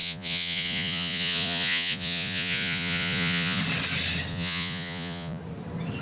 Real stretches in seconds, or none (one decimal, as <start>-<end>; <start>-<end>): 3.6-4.3; 5.4-6.0